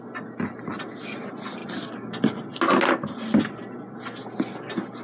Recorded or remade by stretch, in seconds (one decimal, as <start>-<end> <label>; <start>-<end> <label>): 0.0-5.0 recorded